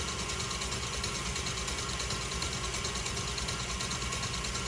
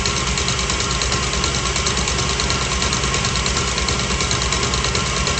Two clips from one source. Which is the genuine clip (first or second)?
second